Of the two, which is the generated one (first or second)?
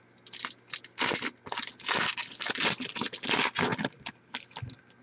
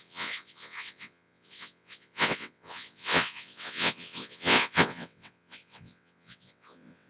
second